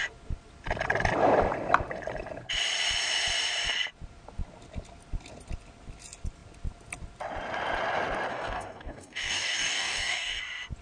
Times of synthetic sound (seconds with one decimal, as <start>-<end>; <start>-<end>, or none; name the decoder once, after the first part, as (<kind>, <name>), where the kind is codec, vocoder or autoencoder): 8.3-10.4 (codec, DAC)